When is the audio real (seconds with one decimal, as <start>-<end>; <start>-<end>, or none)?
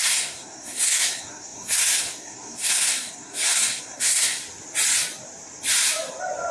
4.4-6.5